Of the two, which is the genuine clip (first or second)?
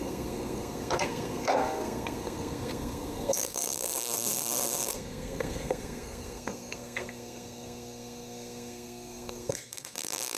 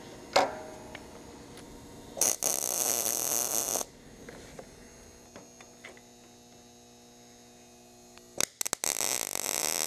second